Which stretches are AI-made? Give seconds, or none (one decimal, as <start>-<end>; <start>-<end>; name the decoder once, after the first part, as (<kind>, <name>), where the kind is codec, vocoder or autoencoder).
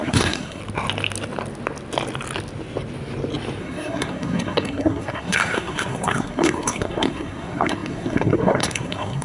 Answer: 0.0-0.6 (codec, SNAC); 3.6-9.2